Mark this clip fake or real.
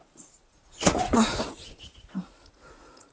fake